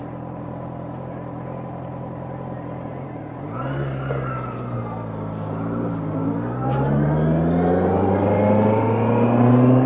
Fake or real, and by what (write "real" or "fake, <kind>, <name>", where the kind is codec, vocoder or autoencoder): real